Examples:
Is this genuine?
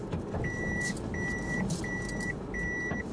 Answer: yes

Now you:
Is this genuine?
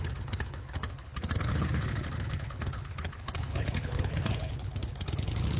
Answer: no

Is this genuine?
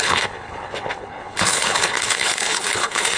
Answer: no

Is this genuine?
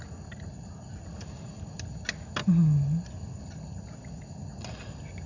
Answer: yes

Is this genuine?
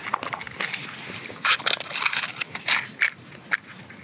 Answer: yes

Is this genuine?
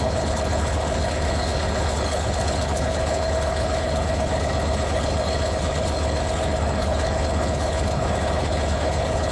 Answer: no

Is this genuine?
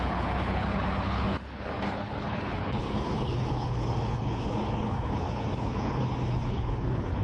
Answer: no